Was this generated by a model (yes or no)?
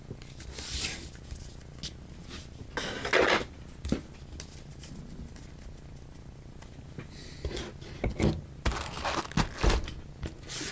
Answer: no